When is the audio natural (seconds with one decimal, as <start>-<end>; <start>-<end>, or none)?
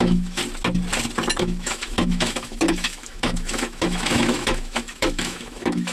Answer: 0.4-1.4